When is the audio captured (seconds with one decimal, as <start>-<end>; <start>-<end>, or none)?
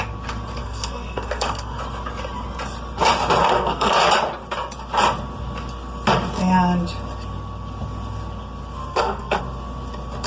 0.0-0.6; 1.8-3.4; 4.0-8.9; 9.4-10.3